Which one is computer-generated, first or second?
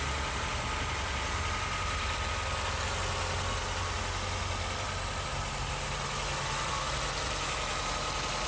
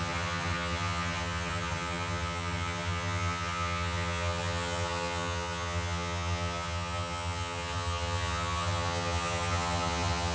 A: second